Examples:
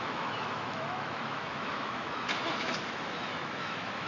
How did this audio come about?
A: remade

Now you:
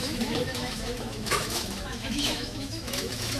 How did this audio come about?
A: remade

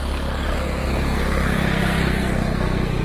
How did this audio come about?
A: remade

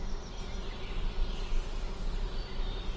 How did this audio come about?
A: recorded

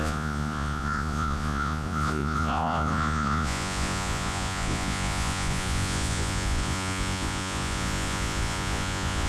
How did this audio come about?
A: remade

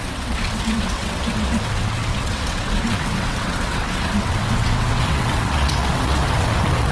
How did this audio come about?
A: remade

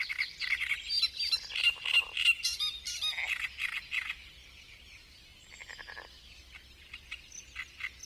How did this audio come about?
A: recorded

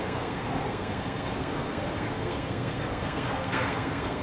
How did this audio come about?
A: remade